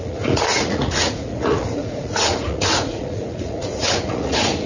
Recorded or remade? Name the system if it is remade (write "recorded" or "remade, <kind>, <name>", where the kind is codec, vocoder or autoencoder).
remade, vocoder, Vocos